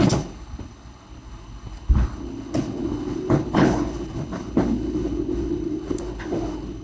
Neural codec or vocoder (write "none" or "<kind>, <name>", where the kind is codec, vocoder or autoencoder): codec, HILCodec